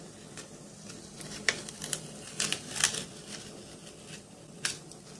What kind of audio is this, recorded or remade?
recorded